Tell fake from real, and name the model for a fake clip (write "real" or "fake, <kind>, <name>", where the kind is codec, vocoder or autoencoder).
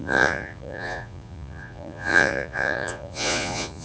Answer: fake, vocoder, Vocos